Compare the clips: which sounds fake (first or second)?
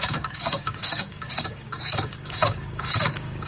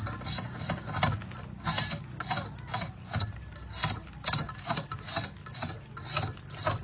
first